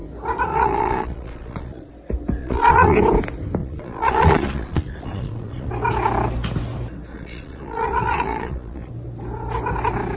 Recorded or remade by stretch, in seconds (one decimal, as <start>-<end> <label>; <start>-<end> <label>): 0.0-0.5 recorded; 0.5-1.9 remade; 1.9-2.4 recorded; 2.4-3.0 remade; 3.0-3.6 recorded; 3.6-5.7 remade; 5.7-7.1 recorded; 7.1-8.9 remade; 8.9-10.2 recorded